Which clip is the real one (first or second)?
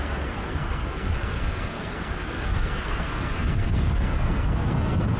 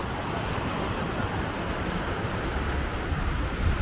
second